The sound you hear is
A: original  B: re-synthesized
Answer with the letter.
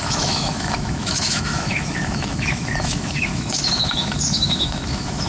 B